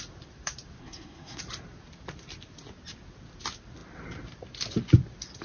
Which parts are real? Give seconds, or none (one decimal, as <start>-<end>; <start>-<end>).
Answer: 0.0-0.8; 1.4-5.4